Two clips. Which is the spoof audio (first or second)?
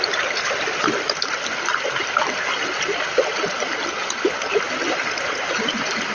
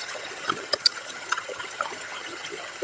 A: second